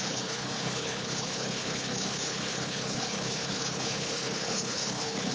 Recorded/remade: remade